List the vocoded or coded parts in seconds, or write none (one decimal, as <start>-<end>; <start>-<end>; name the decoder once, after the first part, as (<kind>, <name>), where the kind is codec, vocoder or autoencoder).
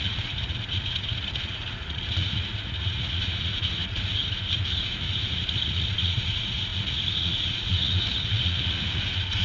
0.0-9.4 (vocoder, Vocos)